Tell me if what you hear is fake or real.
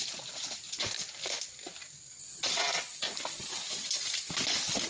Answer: real